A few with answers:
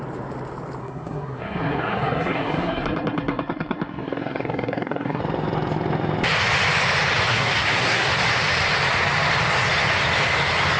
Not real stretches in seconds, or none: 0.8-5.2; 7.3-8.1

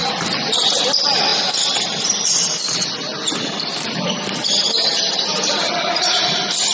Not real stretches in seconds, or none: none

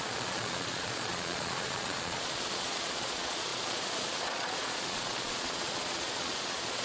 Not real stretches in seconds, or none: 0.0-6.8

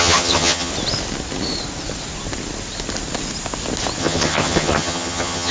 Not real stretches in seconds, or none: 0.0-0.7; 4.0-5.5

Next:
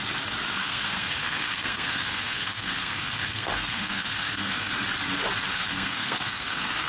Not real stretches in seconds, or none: 0.6-4.7; 5.5-6.9

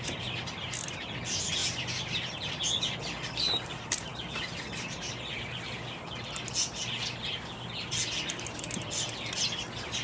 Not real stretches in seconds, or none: none

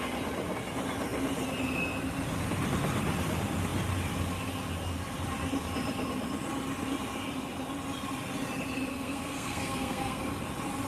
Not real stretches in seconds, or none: 8.9-10.2

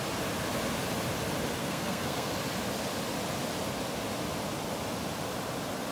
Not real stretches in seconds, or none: 1.6-2.3